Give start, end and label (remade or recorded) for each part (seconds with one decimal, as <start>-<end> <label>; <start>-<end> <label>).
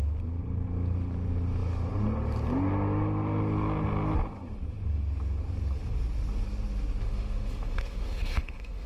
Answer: 0.0-7.0 recorded; 7.0-8.9 remade